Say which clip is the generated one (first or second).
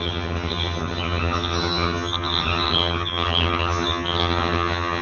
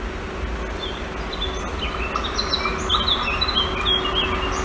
first